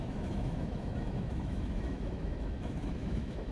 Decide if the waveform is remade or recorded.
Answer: remade